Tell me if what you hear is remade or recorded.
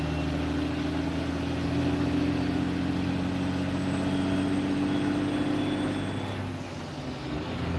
recorded